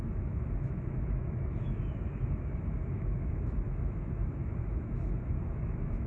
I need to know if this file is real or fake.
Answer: fake